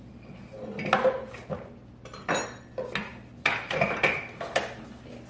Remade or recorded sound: recorded